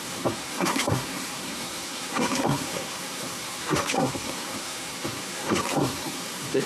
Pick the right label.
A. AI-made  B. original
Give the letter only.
A